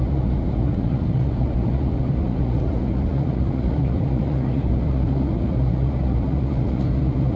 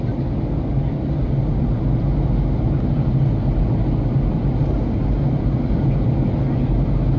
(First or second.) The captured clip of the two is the second